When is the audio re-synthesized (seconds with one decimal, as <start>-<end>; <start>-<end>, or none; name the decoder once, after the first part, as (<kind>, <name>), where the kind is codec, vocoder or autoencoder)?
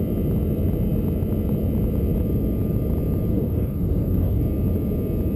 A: 3.3-4.4 (codec, DAC)